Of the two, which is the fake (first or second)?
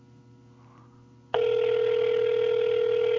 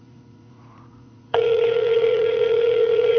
second